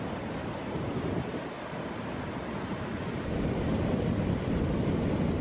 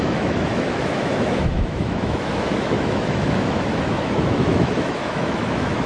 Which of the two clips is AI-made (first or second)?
second